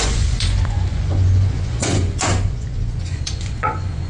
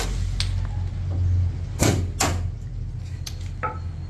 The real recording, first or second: second